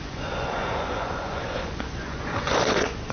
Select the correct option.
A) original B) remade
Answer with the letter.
B